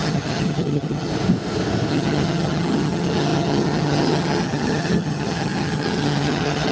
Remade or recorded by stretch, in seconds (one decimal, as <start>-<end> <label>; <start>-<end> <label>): 0.0-1.1 remade; 1.1-1.9 recorded; 1.9-6.7 remade